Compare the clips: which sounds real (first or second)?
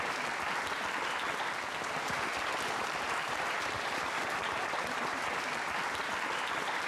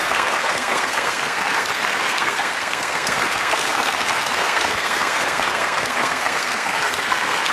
first